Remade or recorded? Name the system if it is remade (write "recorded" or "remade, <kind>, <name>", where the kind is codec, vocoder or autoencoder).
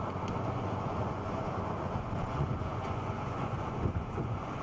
remade, vocoder, Vocos